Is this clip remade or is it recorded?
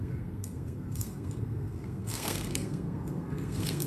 remade